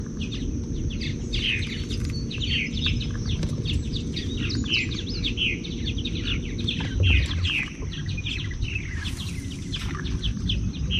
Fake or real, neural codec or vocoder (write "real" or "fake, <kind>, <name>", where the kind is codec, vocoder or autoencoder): real